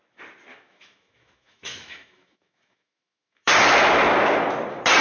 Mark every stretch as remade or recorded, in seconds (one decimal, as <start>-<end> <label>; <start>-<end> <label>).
0.0-0.5 recorded; 0.5-3.5 remade; 3.5-5.0 recorded